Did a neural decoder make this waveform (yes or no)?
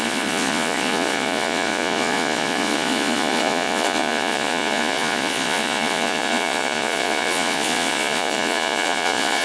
yes